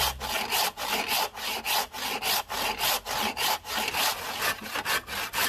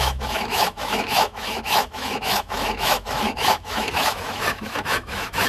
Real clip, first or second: first